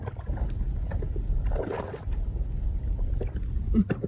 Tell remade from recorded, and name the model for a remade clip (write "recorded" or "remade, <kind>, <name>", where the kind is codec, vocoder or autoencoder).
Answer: recorded